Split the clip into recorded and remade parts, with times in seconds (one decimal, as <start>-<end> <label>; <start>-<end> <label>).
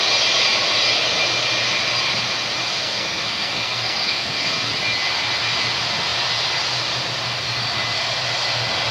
0.0-2.6 recorded; 2.6-4.7 remade; 4.7-8.9 recorded